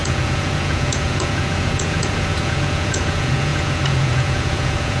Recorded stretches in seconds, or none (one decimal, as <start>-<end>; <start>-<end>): none